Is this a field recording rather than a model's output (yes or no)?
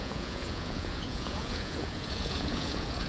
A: no